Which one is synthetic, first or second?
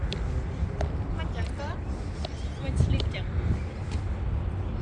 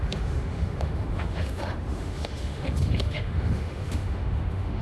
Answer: second